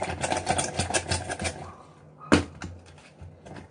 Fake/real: real